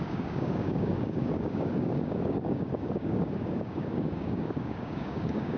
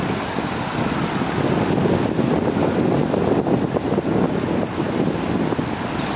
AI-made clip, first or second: first